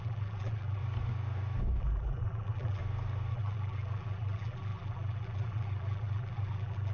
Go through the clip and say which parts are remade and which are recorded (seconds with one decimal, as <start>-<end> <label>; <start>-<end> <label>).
0.0-0.8 remade; 0.8-1.8 recorded; 1.8-2.8 remade; 2.8-3.3 recorded; 3.3-6.9 remade

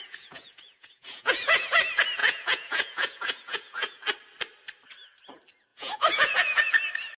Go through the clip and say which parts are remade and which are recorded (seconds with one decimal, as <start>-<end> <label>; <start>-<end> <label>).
0.0-1.8 remade; 1.8-2.2 recorded; 2.2-4.0 remade; 4.0-5.7 recorded; 5.7-6.7 remade; 6.7-7.2 recorded

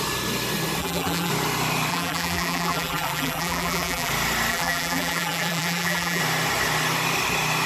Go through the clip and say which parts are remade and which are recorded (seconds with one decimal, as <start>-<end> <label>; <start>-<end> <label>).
0.0-0.8 recorded; 0.8-1.3 remade; 1.3-1.9 recorded; 1.9-4.1 remade; 4.1-4.5 recorded; 4.5-6.2 remade; 6.2-7.7 recorded

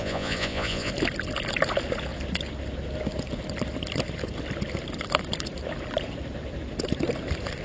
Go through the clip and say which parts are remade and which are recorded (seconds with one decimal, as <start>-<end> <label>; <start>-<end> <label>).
0.0-0.9 remade; 0.9-7.6 recorded